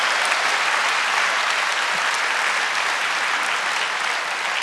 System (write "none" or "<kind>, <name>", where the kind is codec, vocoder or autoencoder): none